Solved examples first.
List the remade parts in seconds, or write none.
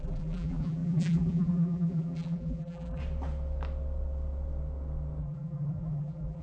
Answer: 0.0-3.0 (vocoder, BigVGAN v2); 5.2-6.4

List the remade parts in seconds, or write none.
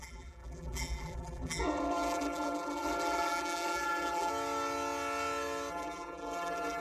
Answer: 0.0-4.3 (vocoder, BigVGAN v2); 5.7-6.8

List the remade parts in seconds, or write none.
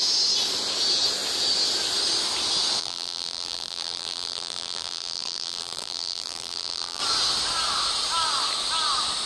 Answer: 2.8-7.0 (vocoder, BigVGAN v2)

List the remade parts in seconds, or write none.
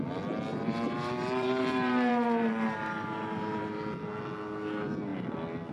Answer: 0.5-3.8 (vocoder, BigVGAN v2)